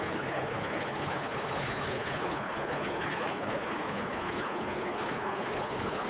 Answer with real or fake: fake